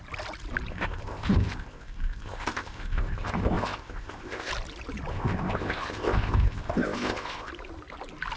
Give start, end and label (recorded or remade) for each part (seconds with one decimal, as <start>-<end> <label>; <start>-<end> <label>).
0.0-0.7 recorded; 0.7-4.5 remade; 4.5-5.1 recorded; 5.1-7.5 remade; 7.5-8.4 recorded